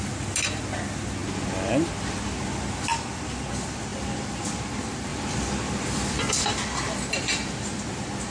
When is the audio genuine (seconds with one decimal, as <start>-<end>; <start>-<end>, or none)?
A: 0.0-5.1; 6.3-8.3